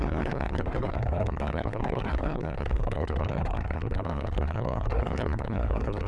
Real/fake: fake